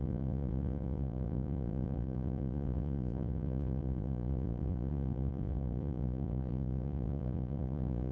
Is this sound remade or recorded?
remade